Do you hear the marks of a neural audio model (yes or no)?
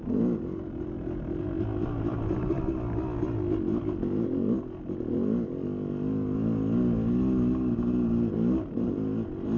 no